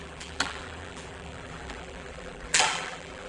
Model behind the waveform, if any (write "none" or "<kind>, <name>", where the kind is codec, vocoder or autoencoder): vocoder, BigVGAN v2